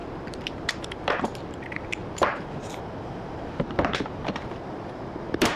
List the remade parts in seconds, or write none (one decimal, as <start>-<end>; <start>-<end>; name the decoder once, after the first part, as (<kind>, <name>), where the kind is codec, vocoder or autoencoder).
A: 0.0-5.6 (vocoder, BigVGAN v2)